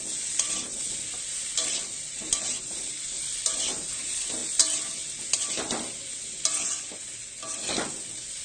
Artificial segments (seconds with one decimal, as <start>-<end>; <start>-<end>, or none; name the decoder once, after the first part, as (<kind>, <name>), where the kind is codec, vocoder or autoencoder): none